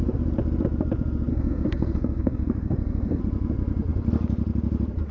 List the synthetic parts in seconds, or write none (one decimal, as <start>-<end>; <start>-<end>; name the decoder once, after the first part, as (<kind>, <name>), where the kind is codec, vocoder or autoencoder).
1.3-3.2 (codec, SNAC)